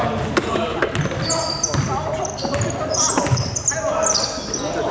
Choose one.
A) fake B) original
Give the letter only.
B